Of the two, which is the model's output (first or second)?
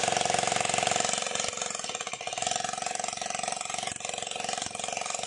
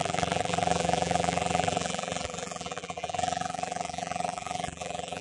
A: second